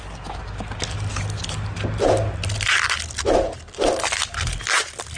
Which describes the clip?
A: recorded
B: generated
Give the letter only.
A